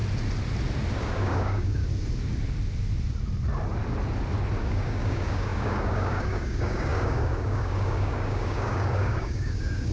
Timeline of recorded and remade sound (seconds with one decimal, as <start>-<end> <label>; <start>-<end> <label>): 0.0-1.0 recorded; 1.0-1.8 remade; 1.8-4.6 recorded; 4.6-9.9 remade